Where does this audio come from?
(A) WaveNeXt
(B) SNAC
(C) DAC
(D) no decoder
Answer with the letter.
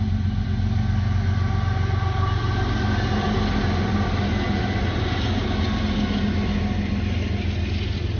D